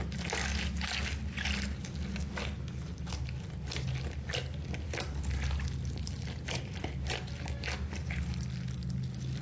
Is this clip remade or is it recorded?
recorded